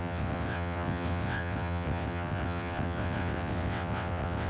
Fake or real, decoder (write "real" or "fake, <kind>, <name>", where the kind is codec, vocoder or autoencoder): fake, vocoder, WaveNeXt